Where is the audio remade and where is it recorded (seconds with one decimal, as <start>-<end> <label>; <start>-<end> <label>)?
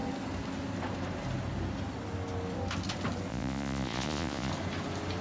0.0-3.3 recorded; 3.3-4.5 remade; 4.5-5.2 recorded